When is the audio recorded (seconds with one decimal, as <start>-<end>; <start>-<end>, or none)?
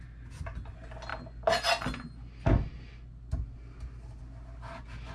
0.0-5.1